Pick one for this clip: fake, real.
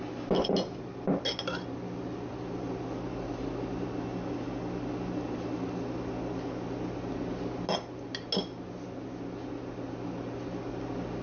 real